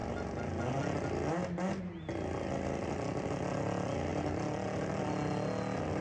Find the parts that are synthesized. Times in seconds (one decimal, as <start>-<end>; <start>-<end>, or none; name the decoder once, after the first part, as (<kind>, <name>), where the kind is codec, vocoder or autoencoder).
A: none